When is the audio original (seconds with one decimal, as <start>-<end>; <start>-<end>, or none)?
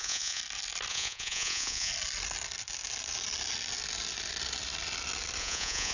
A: 0.4-0.9; 1.9-5.4